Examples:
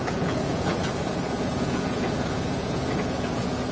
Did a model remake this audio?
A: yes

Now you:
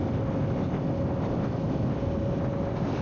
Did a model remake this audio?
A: no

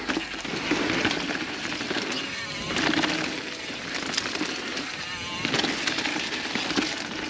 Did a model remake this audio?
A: no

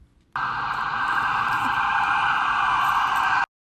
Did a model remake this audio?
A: no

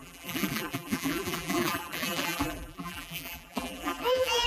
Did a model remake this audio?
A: yes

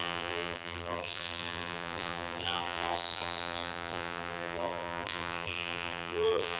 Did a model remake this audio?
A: yes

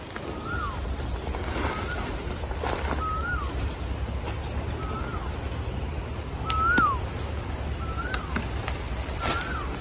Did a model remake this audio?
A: no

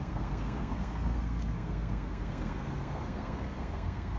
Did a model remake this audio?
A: yes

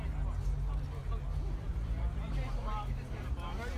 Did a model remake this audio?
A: no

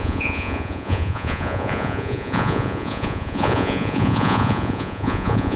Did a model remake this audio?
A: yes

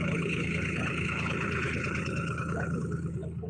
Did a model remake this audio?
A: yes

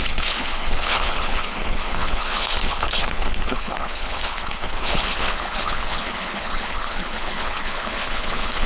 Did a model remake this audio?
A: yes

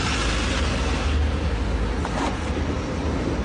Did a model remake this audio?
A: no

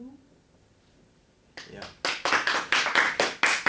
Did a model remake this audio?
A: no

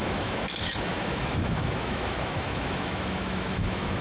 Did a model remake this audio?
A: yes